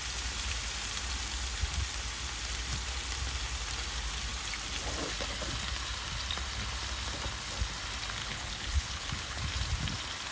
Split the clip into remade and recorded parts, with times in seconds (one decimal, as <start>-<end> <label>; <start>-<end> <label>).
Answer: 0.0-8.2 recorded; 8.2-9.4 remade; 9.4-10.3 recorded